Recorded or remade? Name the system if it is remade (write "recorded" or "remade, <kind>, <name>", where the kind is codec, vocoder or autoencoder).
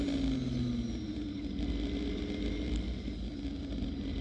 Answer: recorded